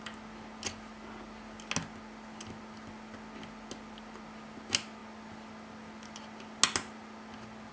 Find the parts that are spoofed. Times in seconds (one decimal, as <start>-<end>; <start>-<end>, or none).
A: none